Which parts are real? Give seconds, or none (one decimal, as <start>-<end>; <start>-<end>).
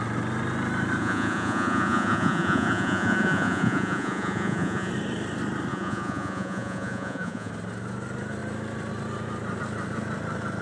0.0-1.0; 4.9-5.7; 7.5-10.6